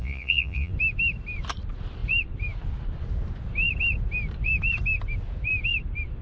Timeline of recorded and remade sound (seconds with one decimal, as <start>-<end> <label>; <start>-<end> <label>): 0.0-0.7 remade; 0.7-6.2 recorded